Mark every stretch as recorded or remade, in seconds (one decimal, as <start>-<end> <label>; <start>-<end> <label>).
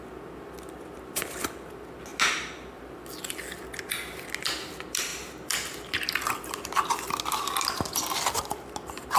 0.0-9.2 recorded